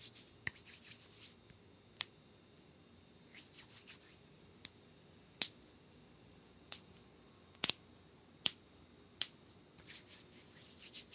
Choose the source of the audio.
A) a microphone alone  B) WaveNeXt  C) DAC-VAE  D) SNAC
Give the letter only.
A